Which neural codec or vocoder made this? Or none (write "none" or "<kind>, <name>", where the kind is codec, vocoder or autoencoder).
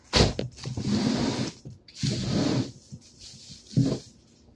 none